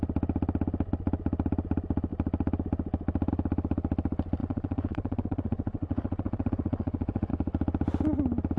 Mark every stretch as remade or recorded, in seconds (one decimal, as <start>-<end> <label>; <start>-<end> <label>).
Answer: 0.0-4.4 recorded; 4.4-7.3 remade; 7.3-8.6 recorded